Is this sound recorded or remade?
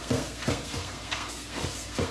remade